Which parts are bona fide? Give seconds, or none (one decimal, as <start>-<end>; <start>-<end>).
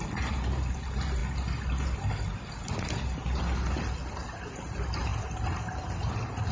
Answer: 0.0-6.5